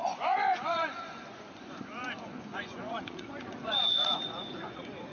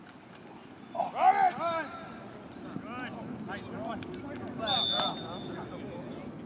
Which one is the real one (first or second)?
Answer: second